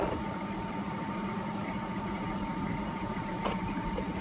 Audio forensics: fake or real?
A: fake